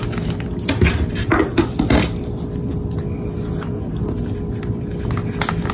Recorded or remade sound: recorded